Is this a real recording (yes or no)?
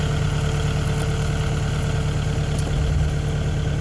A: yes